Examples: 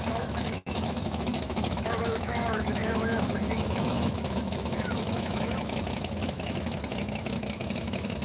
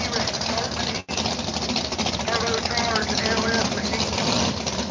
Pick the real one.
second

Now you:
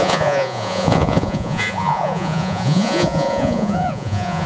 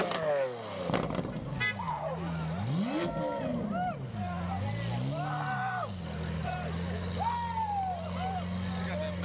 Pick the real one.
second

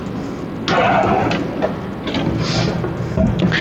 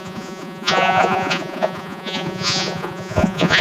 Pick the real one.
first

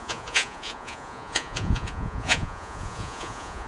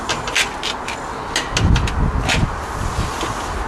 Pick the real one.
second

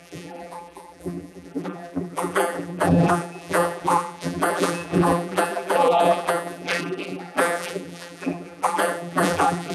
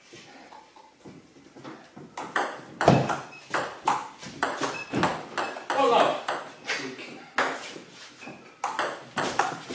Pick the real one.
second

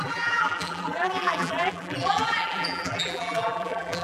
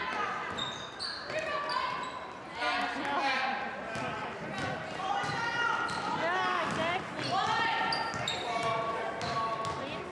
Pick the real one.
second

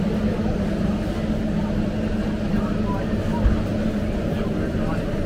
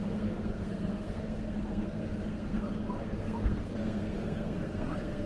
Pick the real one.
first